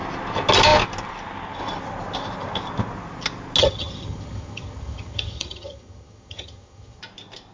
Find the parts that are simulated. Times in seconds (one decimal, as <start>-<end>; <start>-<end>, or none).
3.6-7.0